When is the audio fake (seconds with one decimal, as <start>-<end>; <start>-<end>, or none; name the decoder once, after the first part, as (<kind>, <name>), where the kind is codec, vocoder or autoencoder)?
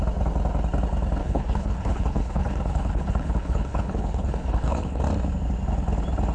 1.2-5.0 (codec, HILCodec)